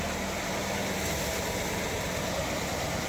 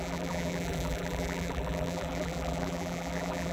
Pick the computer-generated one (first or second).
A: second